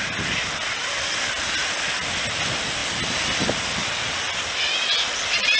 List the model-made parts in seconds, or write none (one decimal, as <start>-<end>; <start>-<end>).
none